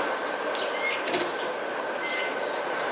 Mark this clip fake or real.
real